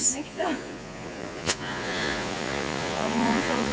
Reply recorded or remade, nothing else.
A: remade